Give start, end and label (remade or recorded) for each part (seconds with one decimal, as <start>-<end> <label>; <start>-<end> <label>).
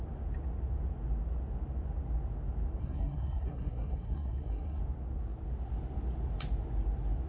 0.0-2.8 recorded; 2.8-4.8 remade; 4.8-7.3 recorded